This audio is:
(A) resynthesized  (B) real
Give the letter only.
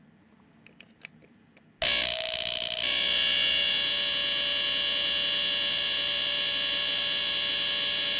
B